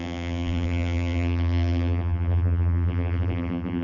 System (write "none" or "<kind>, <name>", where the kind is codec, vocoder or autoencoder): vocoder, BigVGAN v2